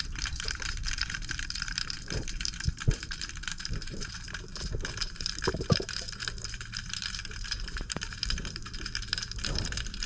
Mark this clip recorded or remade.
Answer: remade